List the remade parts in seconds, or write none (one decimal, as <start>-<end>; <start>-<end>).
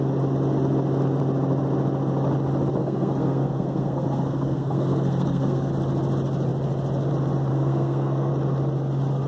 2.8-5.7; 7.5-8.3